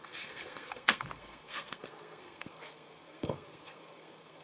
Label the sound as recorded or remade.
remade